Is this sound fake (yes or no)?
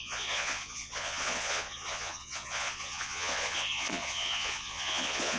yes